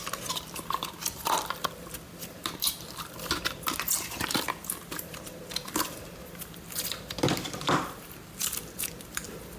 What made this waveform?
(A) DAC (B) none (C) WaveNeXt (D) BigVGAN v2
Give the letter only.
D